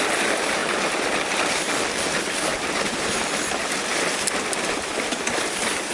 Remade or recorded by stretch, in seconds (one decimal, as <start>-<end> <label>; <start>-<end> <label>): 0.0-0.6 recorded; 0.6-1.7 remade; 1.7-2.5 recorded; 2.5-5.4 remade; 5.4-5.9 recorded